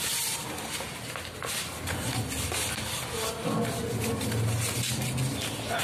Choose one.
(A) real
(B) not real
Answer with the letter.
A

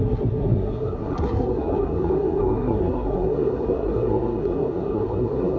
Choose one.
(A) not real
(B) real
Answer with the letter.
A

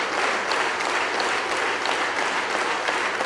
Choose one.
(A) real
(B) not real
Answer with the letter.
A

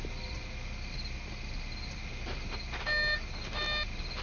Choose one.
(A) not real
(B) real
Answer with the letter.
B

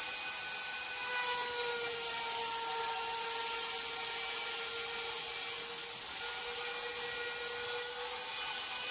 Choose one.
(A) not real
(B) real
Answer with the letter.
B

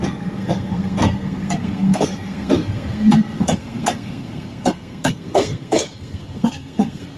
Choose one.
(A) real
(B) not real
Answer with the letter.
B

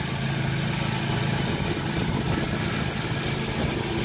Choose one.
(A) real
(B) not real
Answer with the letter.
A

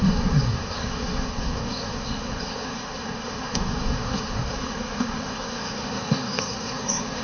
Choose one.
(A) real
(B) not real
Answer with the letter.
B